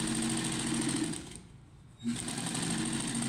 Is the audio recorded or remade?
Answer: recorded